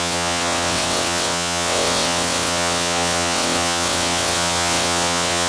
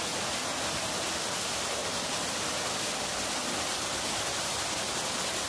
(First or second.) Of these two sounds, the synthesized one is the first